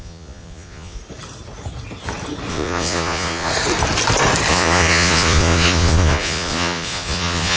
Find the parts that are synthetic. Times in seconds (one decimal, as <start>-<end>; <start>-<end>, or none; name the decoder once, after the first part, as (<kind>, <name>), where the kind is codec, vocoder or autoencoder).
0.0-1.0 (vocoder, Vocos); 2.5-3.5; 4.5-7.6